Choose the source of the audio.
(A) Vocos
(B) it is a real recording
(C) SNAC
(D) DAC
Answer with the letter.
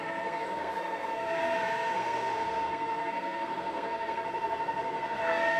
C